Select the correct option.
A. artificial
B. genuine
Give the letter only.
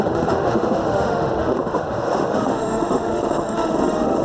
A